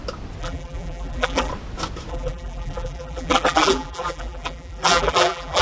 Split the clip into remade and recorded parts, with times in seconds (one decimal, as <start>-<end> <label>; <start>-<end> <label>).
0.0-0.4 recorded; 0.4-1.5 remade; 1.5-2.1 recorded; 2.1-5.6 remade